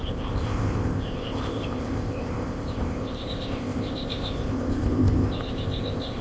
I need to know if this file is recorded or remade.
remade